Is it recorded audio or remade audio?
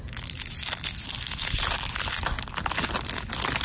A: recorded